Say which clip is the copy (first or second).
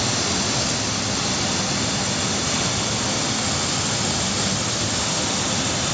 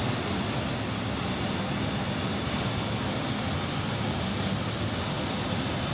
first